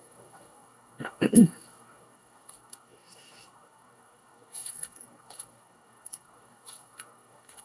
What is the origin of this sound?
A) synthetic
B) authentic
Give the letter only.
A